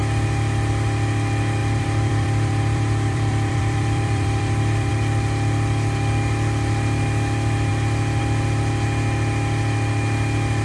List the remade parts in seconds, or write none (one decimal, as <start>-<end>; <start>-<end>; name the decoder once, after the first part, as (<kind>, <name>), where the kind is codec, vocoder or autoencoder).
1.6-4.9 (vocoder, BigVGAN v2)